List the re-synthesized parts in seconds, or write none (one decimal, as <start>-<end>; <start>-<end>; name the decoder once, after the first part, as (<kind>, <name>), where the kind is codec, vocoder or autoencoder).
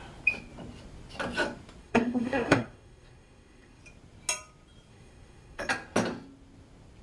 1.8-3.8 (codec, SNAC); 4.9-5.7